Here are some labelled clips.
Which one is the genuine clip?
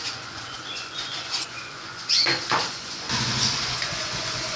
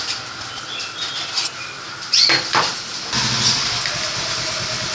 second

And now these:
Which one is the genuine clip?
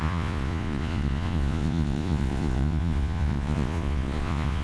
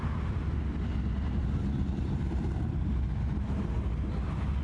second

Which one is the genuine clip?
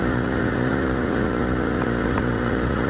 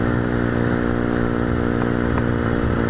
second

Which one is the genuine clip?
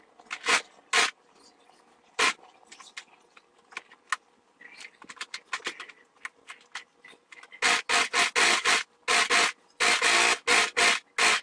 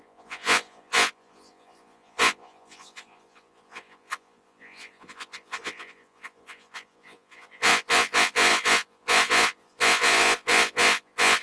first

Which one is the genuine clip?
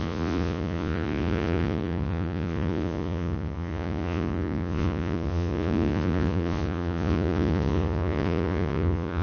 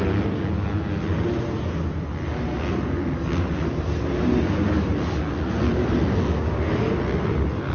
second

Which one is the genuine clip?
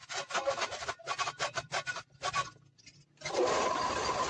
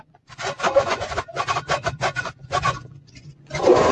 first